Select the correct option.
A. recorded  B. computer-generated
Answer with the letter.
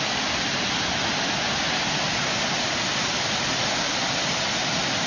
A